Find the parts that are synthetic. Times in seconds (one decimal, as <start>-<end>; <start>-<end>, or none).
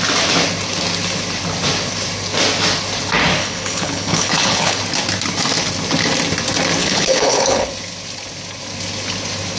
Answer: 3.4-4.8; 6.8-7.7